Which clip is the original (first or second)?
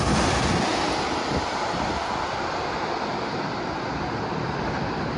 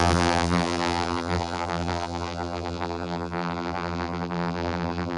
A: first